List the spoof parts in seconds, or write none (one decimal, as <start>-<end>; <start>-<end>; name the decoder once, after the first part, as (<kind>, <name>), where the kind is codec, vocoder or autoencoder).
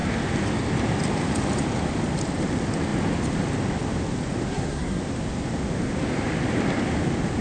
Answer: 4.5-5.0 (codec, SNAC)